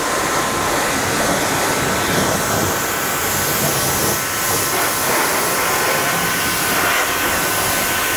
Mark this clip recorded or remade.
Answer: recorded